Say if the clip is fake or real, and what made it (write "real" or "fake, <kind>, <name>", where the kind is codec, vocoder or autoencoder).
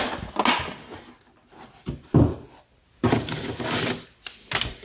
real